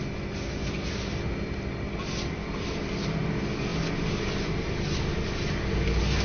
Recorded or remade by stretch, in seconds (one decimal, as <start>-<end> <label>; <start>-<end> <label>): 0.0-6.2 recorded